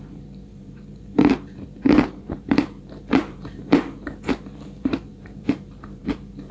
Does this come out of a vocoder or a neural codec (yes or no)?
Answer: yes